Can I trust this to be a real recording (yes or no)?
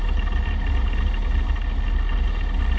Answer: yes